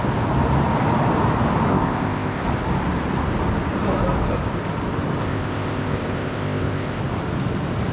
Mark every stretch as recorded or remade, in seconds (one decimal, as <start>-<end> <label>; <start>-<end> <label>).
0.0-1.7 recorded; 1.7-2.4 remade; 2.4-5.2 recorded; 5.2-7.0 remade; 7.0-7.9 recorded